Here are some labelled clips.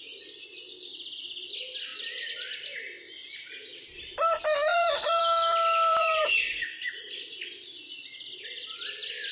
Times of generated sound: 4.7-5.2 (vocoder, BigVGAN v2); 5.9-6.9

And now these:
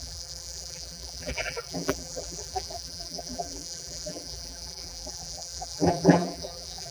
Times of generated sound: 0.0-6.9 (vocoder, BigVGAN v2)

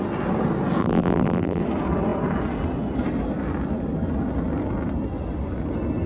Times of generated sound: 0.8-1.6 (vocoder, BigVGAN v2)